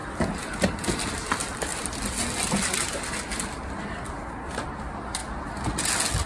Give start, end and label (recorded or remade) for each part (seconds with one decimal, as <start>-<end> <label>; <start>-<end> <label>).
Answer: 0.0-1.1 remade; 1.1-1.7 recorded; 1.7-3.7 remade; 3.7-6.3 recorded